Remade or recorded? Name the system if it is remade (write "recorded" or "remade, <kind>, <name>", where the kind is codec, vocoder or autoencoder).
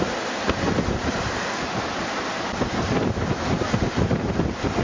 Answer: recorded